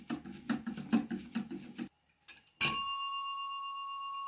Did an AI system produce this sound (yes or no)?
no